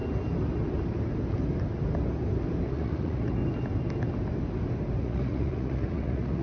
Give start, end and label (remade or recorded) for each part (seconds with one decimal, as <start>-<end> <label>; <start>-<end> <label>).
0.0-2.7 recorded; 2.7-3.4 remade; 3.4-5.0 recorded; 5.0-6.4 remade

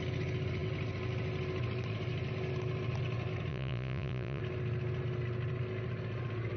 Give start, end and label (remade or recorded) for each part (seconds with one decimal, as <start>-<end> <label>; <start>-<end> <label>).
0.0-3.5 recorded; 3.5-4.4 remade; 4.4-6.6 recorded

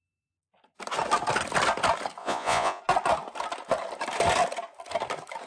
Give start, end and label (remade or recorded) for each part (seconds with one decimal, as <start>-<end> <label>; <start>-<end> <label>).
0.0-2.2 recorded; 2.2-2.8 remade; 2.8-5.5 recorded

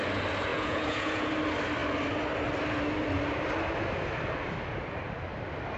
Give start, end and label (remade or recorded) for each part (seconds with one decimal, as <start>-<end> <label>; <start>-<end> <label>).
0.0-0.5 recorded; 0.5-1.3 remade; 1.3-5.8 recorded

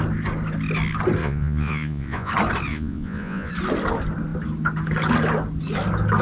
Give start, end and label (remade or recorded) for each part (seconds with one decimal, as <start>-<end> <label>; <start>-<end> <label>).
0.0-1.2 recorded; 1.2-2.3 remade; 2.3-2.7 recorded; 2.7-3.5 remade; 3.5-6.2 recorded